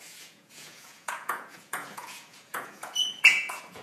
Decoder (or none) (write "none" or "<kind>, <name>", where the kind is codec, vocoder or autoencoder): vocoder, Vocos